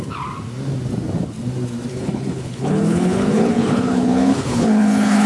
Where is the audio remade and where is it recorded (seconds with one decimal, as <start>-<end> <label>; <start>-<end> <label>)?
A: 0.0-1.9 recorded; 1.9-5.3 remade